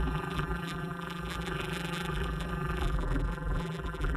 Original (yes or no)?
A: no